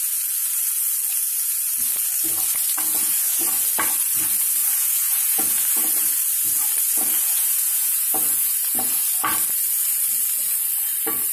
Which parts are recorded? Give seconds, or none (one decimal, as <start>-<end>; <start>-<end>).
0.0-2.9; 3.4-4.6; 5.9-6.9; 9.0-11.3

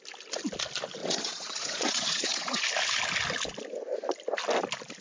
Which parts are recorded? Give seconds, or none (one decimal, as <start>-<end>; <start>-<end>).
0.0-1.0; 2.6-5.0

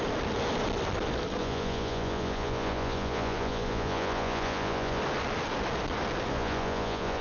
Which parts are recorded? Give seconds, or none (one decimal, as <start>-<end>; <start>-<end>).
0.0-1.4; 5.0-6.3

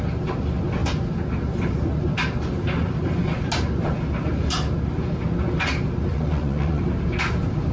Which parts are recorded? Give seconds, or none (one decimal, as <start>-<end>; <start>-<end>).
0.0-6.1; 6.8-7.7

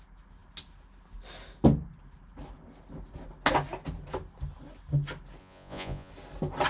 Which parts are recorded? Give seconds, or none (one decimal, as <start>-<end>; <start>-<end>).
0.0-5.4; 6.1-6.7

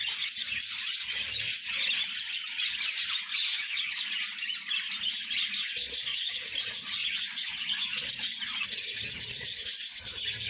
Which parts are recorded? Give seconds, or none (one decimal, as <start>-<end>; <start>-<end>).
0.0-5.7; 6.3-7.0; 8.1-10.5

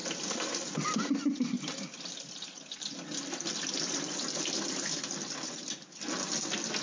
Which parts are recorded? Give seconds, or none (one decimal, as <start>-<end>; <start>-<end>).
0.0-6.8

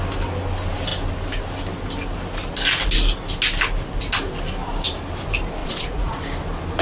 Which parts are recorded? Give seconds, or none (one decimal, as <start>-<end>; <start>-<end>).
0.0-5.6; 6.2-6.8